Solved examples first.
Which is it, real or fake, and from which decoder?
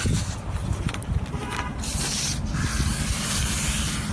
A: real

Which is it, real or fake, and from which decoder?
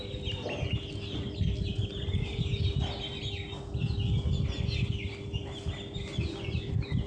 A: real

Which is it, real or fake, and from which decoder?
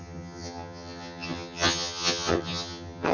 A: fake, vocoder, HiFi-GAN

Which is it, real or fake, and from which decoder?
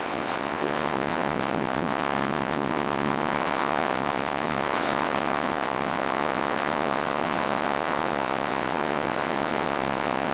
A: fake, vocoder, WaveNeXt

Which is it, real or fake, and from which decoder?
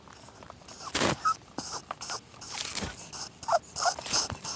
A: real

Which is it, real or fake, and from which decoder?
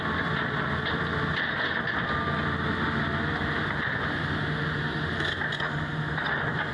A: real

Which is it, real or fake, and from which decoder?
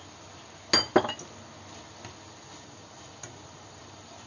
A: real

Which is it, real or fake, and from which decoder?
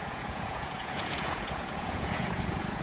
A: fake, vocoder, Vocos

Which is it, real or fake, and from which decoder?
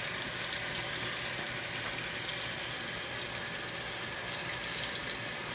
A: real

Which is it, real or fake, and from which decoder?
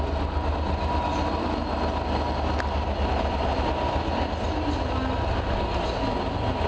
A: real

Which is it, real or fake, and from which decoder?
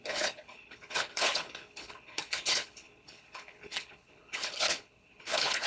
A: fake, codec, HILCodec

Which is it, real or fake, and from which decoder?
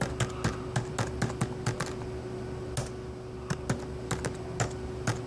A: real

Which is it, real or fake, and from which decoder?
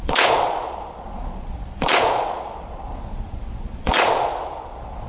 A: fake, vocoder, Vocos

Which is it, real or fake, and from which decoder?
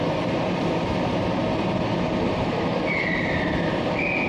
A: fake, vocoder, BigVGAN v2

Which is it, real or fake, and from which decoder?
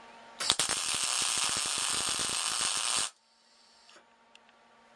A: real